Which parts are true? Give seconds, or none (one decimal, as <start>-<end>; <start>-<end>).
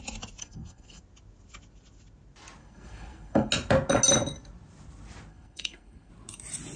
0.0-0.4; 1.0-2.6; 3.5-5.3; 6.1-6.8